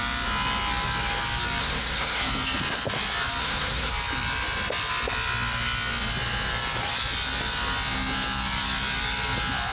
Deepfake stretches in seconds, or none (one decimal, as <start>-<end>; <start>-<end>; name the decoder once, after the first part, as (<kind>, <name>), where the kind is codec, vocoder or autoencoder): 1.6-2.2 (codec, SNAC); 3.4-3.9